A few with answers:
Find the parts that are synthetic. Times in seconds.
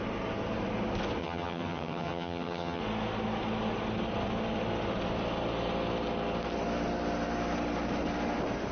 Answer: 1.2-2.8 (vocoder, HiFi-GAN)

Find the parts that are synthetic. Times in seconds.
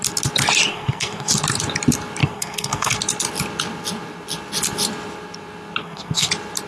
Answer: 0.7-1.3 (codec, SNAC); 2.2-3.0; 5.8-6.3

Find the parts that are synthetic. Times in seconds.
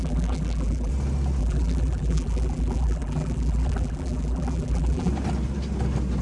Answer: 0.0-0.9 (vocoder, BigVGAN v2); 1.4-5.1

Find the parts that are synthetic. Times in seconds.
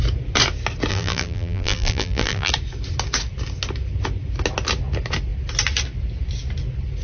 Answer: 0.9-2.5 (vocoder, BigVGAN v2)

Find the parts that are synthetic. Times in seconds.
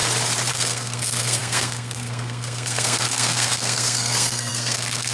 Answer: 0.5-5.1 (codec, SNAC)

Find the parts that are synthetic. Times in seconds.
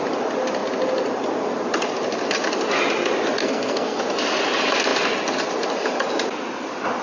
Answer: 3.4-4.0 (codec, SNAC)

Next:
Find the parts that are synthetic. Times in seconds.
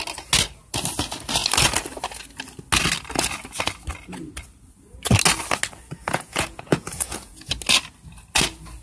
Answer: 6.0-7.5 (vocoder, Vocos)